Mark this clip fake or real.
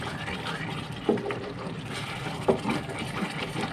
real